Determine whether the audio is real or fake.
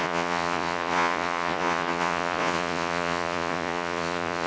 fake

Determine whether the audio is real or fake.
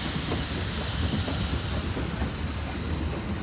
real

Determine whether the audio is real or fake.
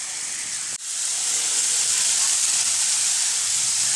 real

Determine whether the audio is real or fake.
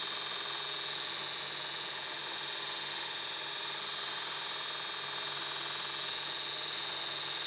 real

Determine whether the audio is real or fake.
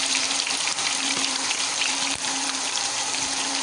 fake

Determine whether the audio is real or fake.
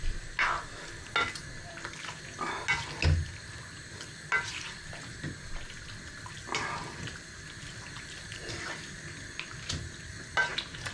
real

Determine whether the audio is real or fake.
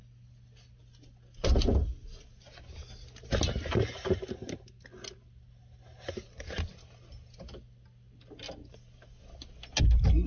real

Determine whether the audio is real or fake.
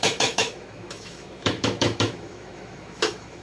fake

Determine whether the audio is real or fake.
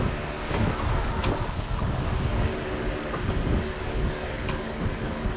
fake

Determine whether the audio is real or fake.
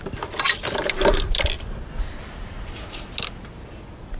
real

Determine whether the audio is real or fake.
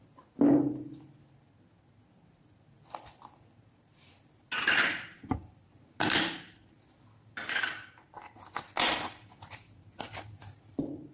real